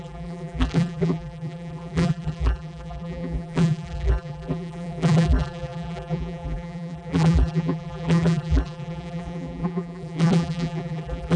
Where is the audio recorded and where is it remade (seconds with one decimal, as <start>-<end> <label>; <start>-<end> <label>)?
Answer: 0.0-11.4 remade